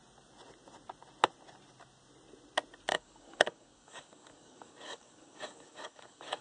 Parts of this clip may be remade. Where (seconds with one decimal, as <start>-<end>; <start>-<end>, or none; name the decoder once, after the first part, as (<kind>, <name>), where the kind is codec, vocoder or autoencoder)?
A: 2.9-6.4 (codec, DAC)